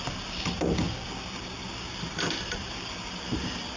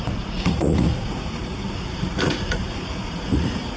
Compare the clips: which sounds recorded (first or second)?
first